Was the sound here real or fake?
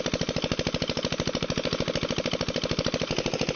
real